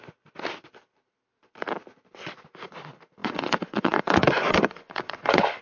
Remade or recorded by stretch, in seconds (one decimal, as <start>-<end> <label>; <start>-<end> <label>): 0.0-3.2 recorded; 3.2-5.6 remade